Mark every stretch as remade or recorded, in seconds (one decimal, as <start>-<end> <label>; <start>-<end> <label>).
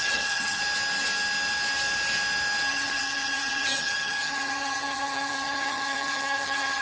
0.0-0.6 remade; 0.6-2.7 recorded; 2.7-6.8 remade